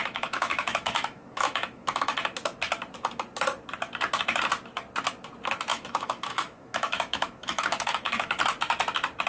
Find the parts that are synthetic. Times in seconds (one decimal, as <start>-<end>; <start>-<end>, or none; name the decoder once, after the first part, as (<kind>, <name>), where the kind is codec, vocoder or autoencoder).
0.0-2.1 (autoencoder, DAC-VAE); 5.7-8.4

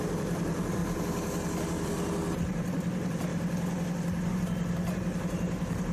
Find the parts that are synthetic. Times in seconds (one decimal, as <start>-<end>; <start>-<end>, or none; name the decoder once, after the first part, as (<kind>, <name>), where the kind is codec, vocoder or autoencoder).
0.0-0.8 (vocoder, BigVGAN v2); 2.3-3.3; 4.3-5.9

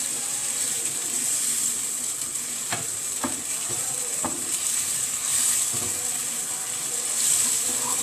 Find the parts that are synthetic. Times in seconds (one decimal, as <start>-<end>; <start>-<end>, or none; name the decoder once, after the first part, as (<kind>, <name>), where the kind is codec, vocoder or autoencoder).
0.0-5.3 (vocoder, BigVGAN v2); 7.5-8.0

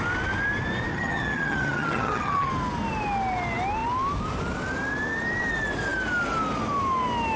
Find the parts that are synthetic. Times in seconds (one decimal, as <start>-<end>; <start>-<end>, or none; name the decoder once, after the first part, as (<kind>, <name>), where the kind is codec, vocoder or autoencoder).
0.9-2.5 (vocoder, HiFi-GAN)